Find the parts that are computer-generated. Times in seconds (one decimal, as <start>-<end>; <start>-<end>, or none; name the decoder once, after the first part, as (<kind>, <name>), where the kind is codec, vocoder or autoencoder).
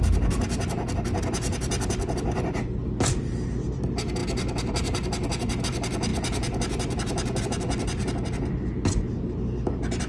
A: none